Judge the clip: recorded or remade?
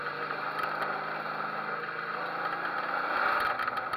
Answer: recorded